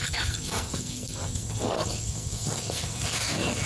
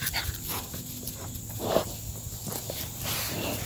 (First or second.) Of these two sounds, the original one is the second